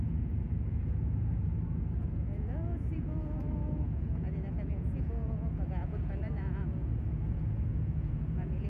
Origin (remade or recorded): remade